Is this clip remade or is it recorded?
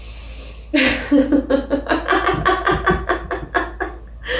recorded